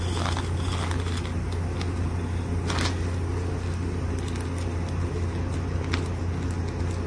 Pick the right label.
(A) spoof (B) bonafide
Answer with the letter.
B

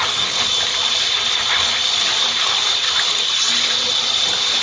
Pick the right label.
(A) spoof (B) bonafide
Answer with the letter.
B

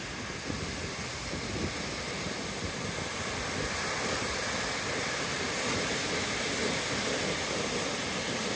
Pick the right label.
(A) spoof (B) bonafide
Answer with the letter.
B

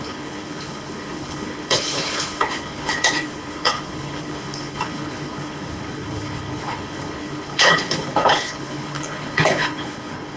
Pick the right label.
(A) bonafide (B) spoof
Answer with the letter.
B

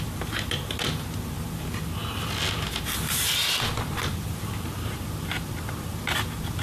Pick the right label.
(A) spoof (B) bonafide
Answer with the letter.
B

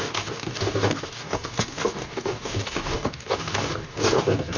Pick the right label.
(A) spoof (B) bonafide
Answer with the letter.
A